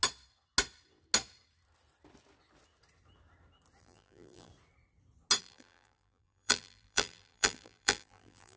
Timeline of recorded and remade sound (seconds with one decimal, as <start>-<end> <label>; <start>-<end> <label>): 0.0-3.8 recorded; 3.8-4.5 remade; 4.5-5.4 recorded; 5.4-8.6 remade